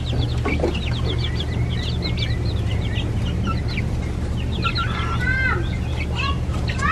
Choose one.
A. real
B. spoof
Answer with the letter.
A